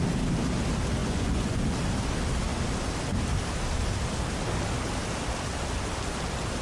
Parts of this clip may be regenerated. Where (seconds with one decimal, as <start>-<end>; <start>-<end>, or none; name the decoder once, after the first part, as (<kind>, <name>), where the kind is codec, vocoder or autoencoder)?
1.0-1.6 (vocoder, Vocos)